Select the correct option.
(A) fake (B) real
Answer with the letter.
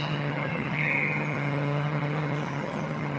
A